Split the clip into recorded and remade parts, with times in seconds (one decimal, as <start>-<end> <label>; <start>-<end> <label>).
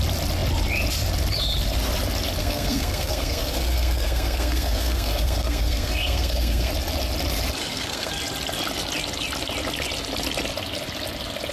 0.0-2.4 recorded; 2.4-6.7 remade; 6.7-7.6 recorded; 7.6-8.1 remade; 8.1-11.5 recorded